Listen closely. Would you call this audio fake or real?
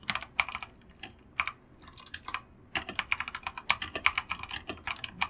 real